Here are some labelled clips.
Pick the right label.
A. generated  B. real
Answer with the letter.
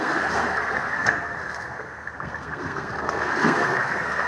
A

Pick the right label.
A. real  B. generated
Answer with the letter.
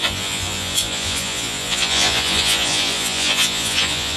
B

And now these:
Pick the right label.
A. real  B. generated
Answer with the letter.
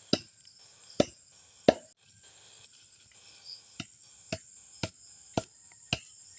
A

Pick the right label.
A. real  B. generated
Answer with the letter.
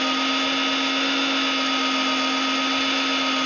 A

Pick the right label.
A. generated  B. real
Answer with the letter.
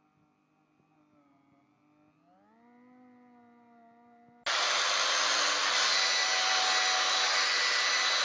B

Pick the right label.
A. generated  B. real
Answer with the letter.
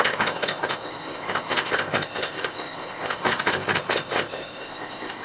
A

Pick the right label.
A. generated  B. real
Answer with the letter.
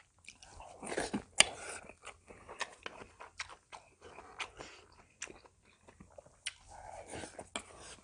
B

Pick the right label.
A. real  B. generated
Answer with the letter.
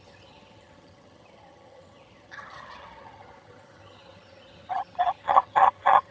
B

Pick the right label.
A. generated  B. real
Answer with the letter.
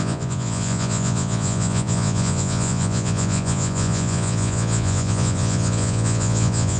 A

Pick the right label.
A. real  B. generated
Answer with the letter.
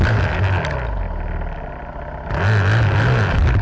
A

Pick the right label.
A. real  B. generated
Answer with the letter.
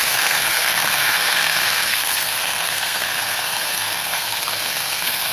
B